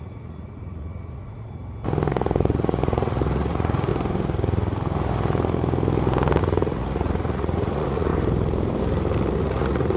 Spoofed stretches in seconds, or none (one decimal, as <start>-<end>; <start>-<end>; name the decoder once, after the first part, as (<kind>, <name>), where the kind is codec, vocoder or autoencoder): 0.0-1.6 (vocoder, Vocos); 2.1-3.9; 6.4-8.1; 9.4-10.0